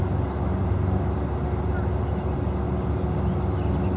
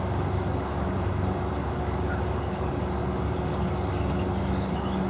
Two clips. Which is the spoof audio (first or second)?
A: second